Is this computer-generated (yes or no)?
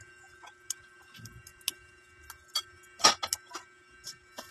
no